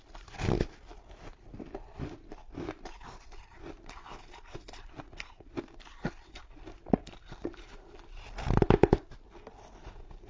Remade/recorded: recorded